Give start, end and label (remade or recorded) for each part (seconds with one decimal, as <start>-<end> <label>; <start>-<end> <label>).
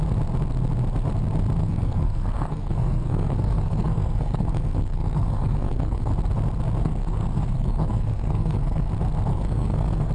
0.0-1.6 recorded; 1.6-6.1 remade; 6.1-6.8 recorded; 6.8-8.9 remade; 8.9-9.3 recorded; 9.3-10.1 remade